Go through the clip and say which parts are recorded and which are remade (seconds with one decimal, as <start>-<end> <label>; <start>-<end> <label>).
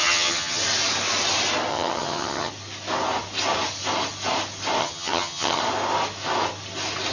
0.0-0.6 remade; 0.6-1.7 recorded; 1.7-2.5 remade; 2.5-4.8 recorded; 4.8-5.6 remade; 5.6-7.1 recorded